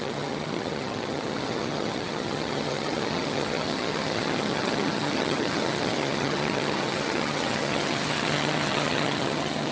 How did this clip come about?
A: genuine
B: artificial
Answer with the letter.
B